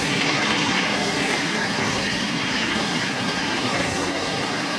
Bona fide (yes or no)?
no